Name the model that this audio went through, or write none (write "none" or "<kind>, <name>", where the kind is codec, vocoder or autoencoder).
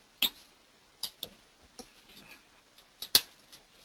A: none